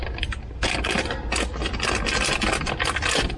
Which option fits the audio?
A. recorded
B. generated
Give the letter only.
A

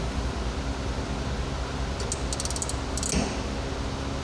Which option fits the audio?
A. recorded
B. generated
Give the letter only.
A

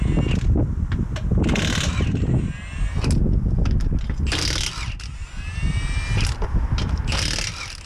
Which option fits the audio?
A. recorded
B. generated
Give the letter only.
A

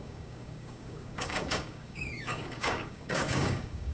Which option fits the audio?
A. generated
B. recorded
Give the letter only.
A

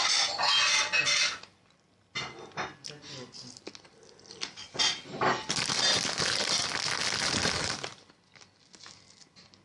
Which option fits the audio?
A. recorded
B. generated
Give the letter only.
A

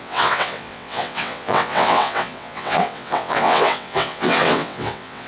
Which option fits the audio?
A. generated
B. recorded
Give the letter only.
A